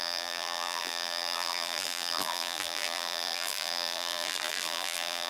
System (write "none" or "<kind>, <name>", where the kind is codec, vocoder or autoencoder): vocoder, BigVGAN v2